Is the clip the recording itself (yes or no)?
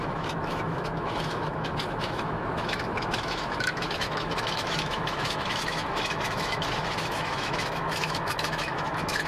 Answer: no